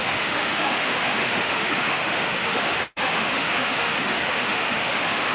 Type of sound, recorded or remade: remade